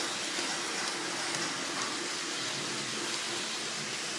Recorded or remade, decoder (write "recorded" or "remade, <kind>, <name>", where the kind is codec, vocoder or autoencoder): recorded